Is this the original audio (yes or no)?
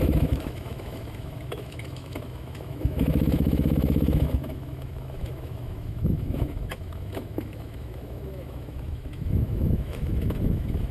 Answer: no